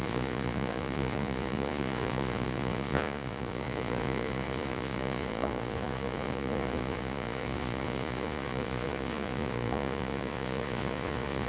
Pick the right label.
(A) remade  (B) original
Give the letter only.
A